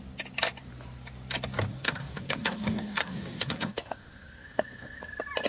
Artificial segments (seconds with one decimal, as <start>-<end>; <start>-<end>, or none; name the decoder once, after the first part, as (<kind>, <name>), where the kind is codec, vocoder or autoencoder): 1.7-5.0 (codec, SNAC)